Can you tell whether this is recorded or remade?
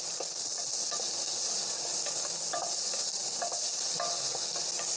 recorded